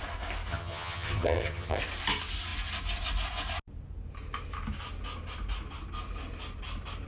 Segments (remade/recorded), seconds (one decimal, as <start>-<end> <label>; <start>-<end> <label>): 0.0-0.5 recorded; 0.5-1.8 remade; 1.8-7.1 recorded